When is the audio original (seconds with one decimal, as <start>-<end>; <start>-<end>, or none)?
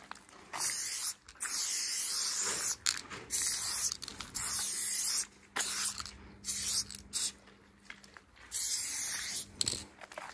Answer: 0.0-10.3